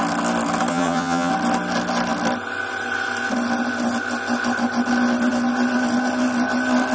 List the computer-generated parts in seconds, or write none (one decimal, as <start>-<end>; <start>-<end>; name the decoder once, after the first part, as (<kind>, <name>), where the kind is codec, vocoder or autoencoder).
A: 0.7-1.3 (vocoder, HiFi-GAN)